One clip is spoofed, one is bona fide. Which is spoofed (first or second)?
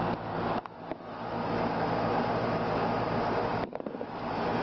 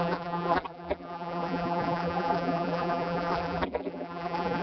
second